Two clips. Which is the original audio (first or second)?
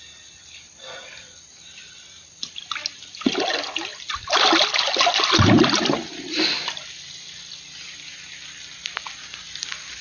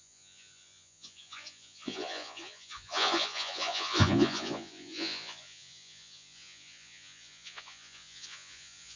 first